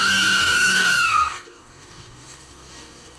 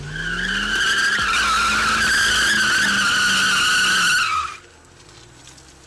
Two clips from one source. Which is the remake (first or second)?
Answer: first